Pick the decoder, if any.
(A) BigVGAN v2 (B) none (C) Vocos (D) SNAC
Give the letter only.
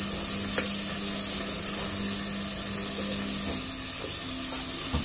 B